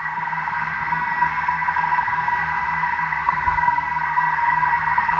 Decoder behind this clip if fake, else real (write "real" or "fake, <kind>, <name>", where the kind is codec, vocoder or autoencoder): fake, codec, SNAC